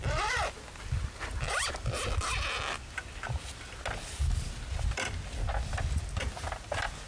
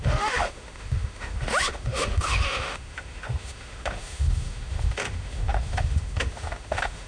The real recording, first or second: first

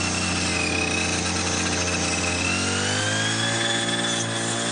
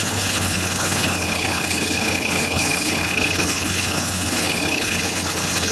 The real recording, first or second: first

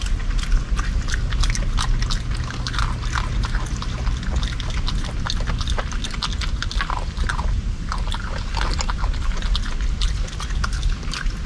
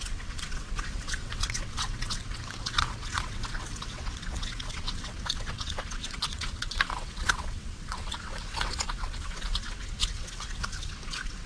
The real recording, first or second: first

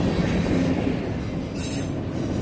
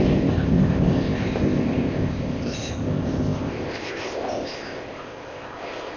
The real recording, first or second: first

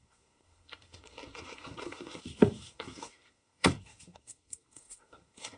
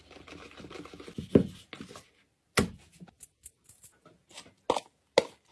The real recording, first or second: second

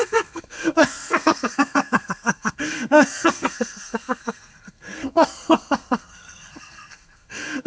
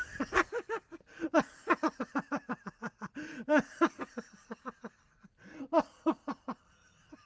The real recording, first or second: second